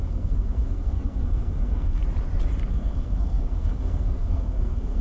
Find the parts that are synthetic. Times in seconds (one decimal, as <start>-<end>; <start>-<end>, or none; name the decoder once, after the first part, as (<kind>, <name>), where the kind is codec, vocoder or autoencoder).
0.0-2.0 (codec, SNAC); 2.7-5.0